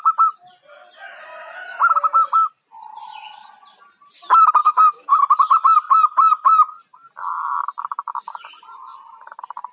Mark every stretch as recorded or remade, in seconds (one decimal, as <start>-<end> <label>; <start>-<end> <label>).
0.0-4.6 recorded; 4.6-5.2 remade; 5.2-9.7 recorded